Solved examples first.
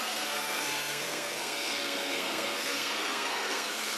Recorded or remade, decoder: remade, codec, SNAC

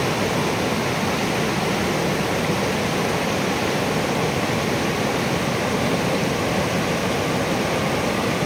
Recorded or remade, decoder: recorded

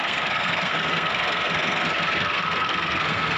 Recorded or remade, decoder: remade, codec, SNAC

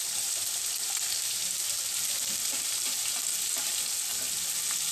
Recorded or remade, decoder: recorded